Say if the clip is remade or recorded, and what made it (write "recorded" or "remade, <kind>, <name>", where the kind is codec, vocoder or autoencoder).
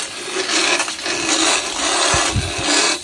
recorded